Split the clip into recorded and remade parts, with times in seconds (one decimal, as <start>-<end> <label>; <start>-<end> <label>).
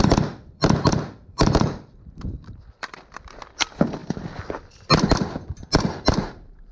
0.0-4.0 remade; 4.0-6.3 recorded; 6.3-6.7 remade